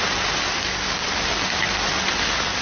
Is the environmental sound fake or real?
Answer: real